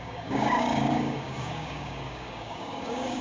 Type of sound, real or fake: fake